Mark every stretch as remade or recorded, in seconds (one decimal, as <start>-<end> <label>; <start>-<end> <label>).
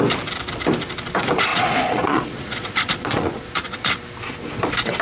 0.0-1.5 recorded; 1.5-3.9 remade; 3.9-5.0 recorded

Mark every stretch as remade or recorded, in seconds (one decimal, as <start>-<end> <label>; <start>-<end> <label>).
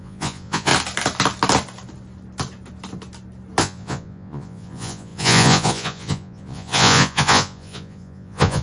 0.0-0.7 remade; 0.7-3.6 recorded; 3.6-8.6 remade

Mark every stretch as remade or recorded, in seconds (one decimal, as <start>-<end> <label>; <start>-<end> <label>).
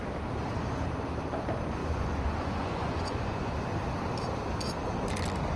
0.0-1.8 recorded; 1.8-3.5 remade; 3.5-5.6 recorded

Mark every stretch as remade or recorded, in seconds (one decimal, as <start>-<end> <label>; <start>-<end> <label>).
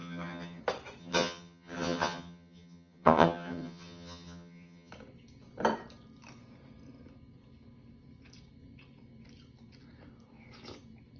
0.0-0.6 remade; 0.6-1.0 recorded; 1.0-4.9 remade; 4.9-11.2 recorded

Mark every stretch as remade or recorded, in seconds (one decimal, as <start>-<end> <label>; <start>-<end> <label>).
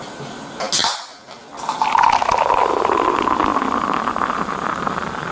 0.0-5.3 recorded